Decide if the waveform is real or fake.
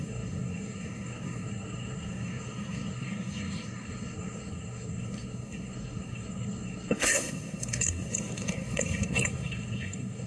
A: fake